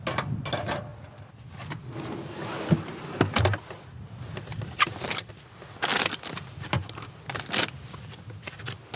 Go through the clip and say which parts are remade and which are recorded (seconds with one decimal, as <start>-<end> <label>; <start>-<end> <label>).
0.0-4.5 recorded; 4.5-5.3 remade; 5.3-5.9 recorded; 5.9-7.1 remade; 7.1-9.0 recorded